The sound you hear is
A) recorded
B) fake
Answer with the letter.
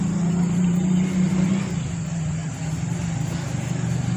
A